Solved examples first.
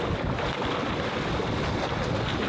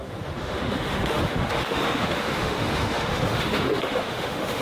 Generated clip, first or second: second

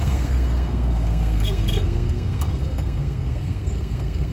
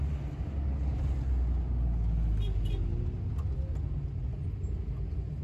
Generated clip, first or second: first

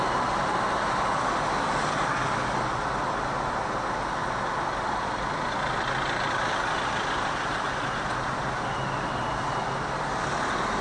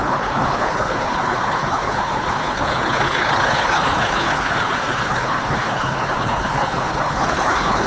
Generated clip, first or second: second